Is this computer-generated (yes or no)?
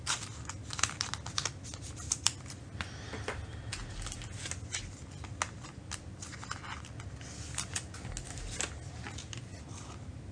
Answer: no